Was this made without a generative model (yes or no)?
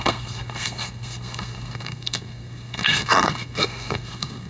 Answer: no